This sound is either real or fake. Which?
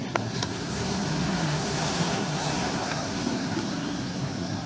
fake